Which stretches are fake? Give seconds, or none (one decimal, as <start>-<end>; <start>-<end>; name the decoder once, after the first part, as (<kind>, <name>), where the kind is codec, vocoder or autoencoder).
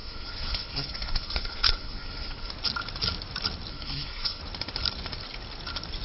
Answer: 0.0-2.5 (codec, SNAC); 3.7-4.4